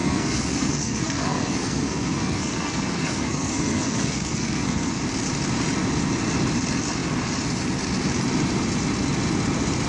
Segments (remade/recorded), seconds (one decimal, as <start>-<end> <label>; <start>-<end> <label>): 0.0-5.0 remade; 5.0-9.9 recorded